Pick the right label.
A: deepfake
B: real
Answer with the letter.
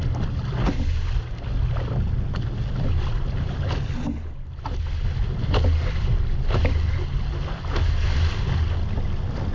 B